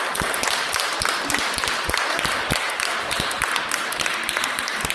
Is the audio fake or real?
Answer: real